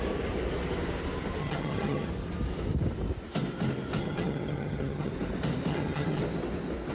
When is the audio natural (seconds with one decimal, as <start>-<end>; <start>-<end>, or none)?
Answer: 0.0-1.4; 2.1-4.0; 5.1-5.7; 6.2-6.9